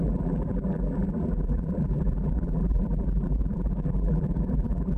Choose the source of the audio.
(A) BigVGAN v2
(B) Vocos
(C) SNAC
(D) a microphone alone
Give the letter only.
A